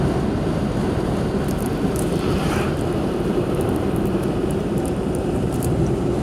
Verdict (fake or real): fake